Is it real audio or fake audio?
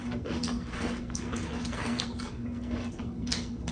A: fake